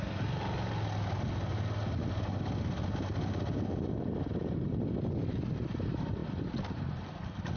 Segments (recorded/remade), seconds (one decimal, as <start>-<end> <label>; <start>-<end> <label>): 0.0-7.6 recorded